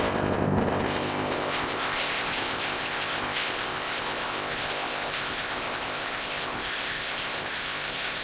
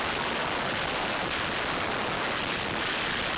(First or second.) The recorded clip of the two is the second